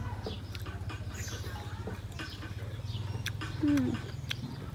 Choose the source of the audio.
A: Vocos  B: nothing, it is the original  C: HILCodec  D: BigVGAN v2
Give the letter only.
B